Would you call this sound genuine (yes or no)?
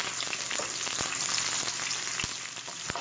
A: yes